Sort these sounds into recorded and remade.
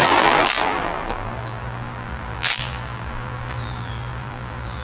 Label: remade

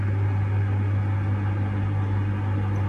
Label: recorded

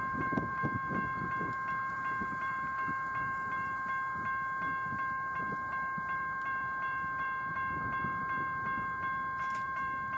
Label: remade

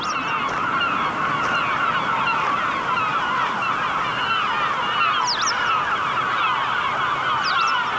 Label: recorded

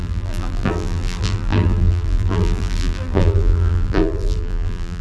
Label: remade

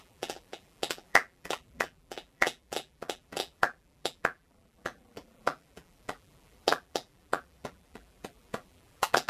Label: remade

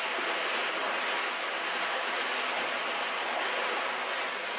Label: recorded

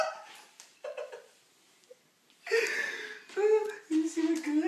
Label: recorded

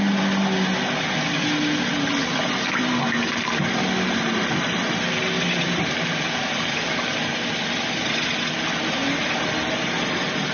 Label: recorded